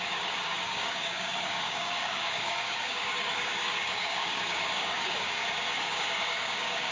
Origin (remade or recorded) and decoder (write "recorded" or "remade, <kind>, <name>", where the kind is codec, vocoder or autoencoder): remade, codec, DAC